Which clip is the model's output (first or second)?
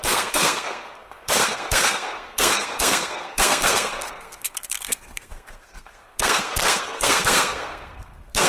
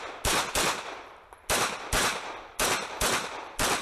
first